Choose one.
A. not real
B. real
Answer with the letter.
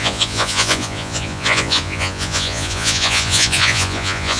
A